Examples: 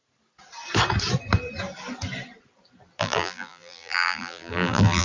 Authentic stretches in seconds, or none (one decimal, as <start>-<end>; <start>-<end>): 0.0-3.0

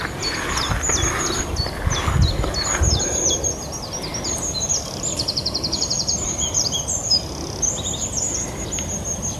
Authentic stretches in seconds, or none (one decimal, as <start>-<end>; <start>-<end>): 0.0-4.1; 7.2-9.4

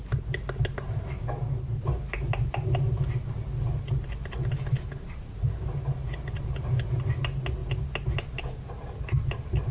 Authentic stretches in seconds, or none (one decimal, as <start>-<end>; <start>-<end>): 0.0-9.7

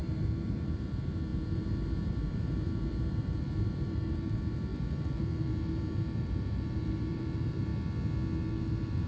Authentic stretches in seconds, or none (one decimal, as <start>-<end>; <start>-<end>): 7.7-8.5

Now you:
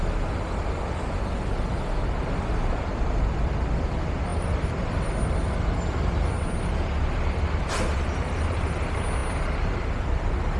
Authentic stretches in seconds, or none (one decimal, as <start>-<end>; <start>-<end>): 0.0-10.6

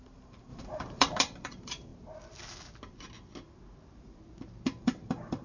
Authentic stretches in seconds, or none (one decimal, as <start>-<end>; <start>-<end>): 1.9-4.8